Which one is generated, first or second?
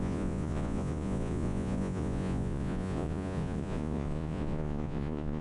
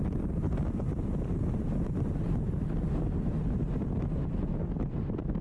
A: first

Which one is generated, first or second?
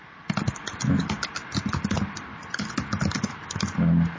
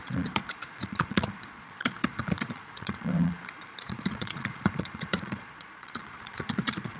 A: second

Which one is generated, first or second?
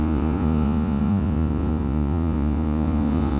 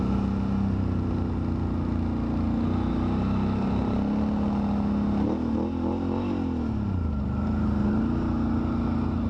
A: first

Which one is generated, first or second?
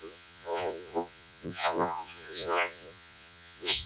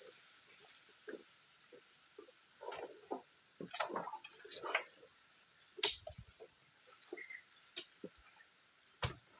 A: first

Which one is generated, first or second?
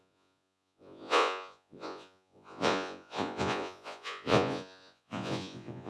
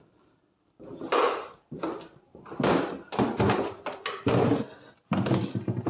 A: first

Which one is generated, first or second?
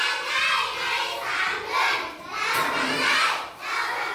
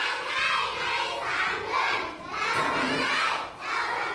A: second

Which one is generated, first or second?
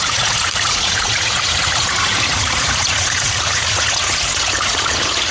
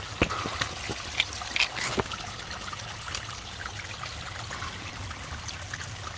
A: first